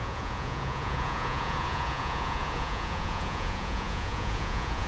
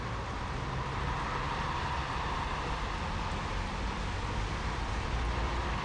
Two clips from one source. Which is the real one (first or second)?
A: second